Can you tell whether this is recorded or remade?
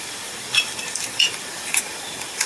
remade